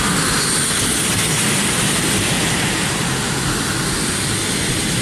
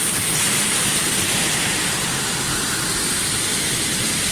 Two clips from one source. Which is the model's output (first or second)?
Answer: second